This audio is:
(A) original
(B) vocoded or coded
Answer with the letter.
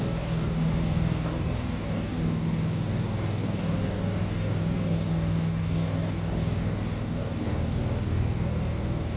B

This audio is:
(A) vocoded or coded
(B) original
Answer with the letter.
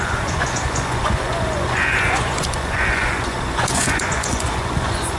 A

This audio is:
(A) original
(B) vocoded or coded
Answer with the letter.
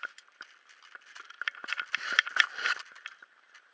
B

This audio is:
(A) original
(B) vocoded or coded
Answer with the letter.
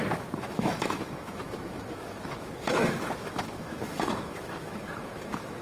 B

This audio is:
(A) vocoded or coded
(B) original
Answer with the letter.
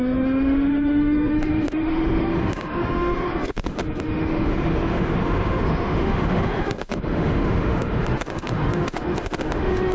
A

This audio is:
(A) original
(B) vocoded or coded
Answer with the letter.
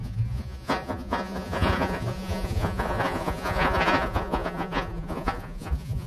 B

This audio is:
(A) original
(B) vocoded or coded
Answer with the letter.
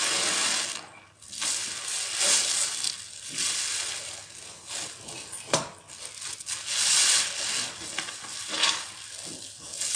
A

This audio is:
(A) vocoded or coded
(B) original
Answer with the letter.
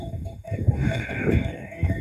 A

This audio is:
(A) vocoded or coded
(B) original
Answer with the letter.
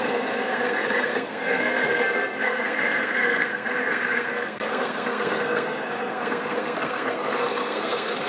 A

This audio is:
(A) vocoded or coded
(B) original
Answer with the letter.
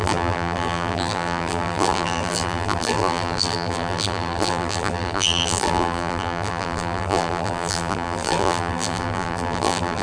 A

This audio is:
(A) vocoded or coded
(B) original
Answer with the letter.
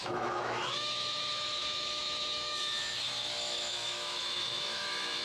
A